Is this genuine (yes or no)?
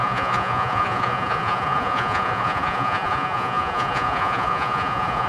no